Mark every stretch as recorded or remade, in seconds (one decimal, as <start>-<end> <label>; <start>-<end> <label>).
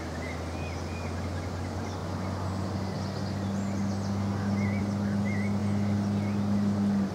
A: 0.0-7.1 recorded